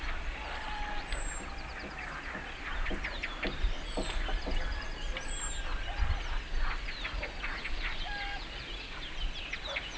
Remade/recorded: recorded